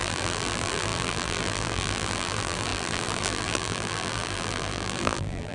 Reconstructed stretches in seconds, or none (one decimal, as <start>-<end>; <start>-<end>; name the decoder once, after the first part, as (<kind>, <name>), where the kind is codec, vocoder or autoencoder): 0.0-5.5 (vocoder, BigVGAN v2)